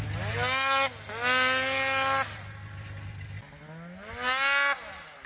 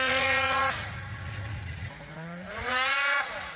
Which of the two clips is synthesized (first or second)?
second